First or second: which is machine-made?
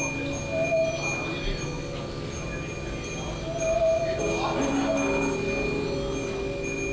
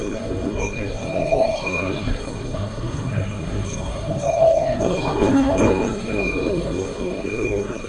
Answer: second